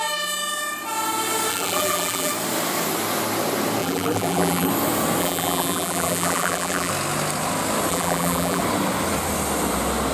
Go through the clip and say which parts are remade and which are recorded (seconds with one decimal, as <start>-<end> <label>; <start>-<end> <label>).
0.0-1.5 recorded; 1.5-2.3 remade; 2.3-3.8 recorded; 3.8-4.7 remade; 4.7-5.2 recorded; 5.2-6.9 remade; 6.9-7.9 recorded; 7.9-8.6 remade; 8.6-10.1 recorded